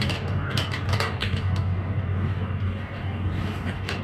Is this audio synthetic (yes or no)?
yes